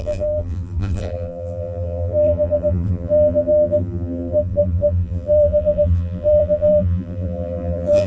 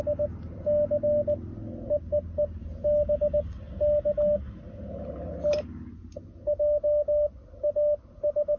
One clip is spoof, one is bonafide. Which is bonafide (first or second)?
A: second